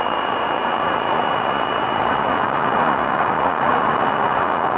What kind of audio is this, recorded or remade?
remade